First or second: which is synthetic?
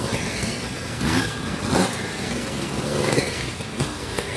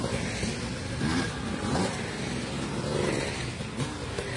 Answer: first